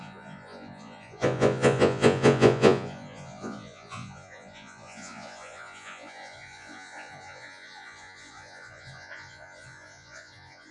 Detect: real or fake fake